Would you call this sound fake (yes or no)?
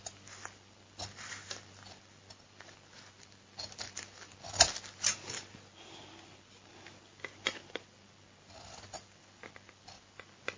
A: no